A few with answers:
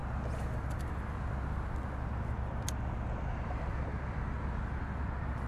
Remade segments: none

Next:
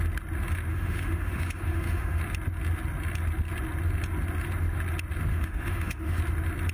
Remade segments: 0.7-2.2 (autoencoder, DAC-VAE); 5.3-6.2

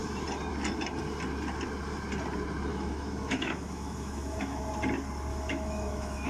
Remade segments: 2.7-4.6 (autoencoder, DAC-VAE); 5.3-6.3

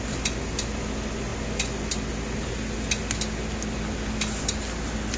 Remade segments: none

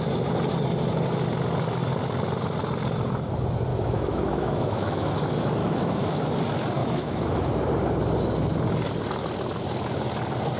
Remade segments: 3.7-5.1 (autoencoder, DAC-VAE); 5.6-6.2; 6.8-7.5

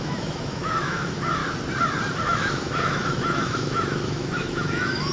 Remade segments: 0.0-1.4 (autoencoder, DAC-VAE); 2.2-5.1

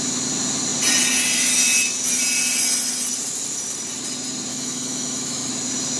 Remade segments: 4.5-5.5 (autoencoder, DAC-VAE)

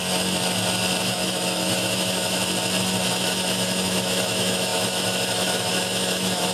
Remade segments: 1.0-2.4 (autoencoder, DAC-VAE); 3.1-6.5